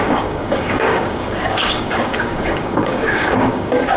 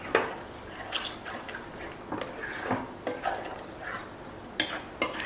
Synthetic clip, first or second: first